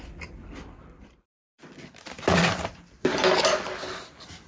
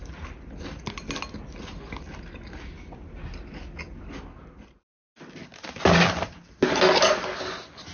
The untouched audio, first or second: second